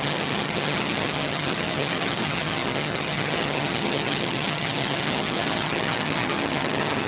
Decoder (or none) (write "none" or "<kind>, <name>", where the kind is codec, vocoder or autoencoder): vocoder, HiFi-GAN